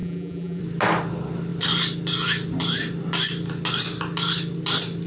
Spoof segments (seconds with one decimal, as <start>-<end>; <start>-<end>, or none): 0.0-0.6